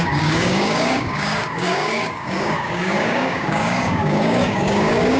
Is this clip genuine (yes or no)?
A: no